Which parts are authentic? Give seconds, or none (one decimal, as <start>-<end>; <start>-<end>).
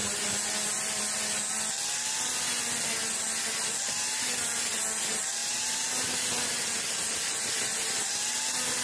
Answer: 0.0-8.8